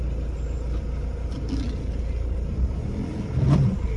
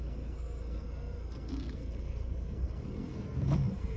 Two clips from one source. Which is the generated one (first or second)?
second